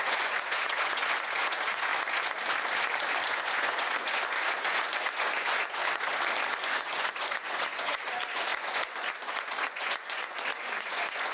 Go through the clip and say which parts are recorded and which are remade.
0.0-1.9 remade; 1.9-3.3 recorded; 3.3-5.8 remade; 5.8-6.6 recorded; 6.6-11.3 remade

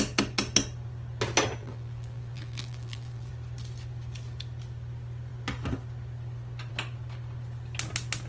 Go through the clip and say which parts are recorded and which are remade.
0.0-1.6 recorded; 1.6-3.3 remade; 3.3-8.3 recorded